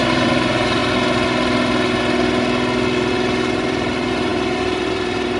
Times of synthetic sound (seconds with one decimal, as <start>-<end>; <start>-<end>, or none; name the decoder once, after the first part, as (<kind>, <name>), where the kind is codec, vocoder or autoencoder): 0.0-0.8 (vocoder, BigVGAN v2); 3.1-5.4